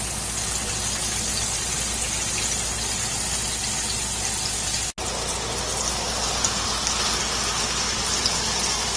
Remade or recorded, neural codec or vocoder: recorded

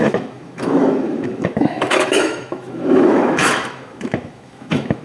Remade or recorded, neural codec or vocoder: remade, autoencoder, DAC-VAE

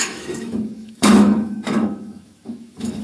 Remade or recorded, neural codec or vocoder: remade, autoencoder, DAC-VAE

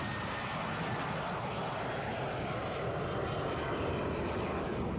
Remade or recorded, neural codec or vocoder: recorded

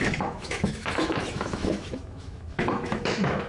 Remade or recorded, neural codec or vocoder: remade, autoencoder, DAC-VAE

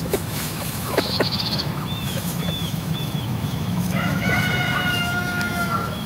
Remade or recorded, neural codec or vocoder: remade, autoencoder, DAC-VAE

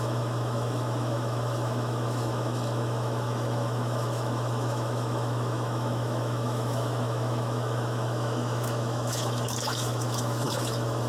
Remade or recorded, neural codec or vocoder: remade, autoencoder, DAC-VAE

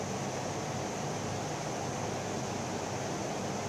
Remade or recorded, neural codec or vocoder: recorded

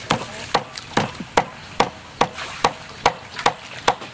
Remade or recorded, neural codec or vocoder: recorded